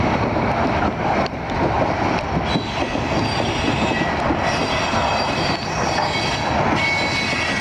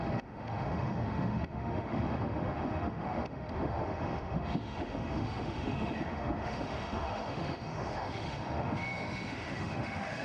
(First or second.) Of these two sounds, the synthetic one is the second